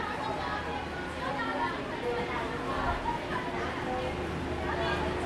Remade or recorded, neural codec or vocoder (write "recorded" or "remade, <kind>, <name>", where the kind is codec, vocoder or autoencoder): recorded